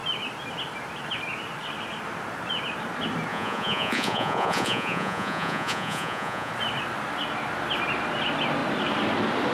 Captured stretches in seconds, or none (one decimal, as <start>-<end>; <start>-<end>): 0.0-3.3; 6.5-9.5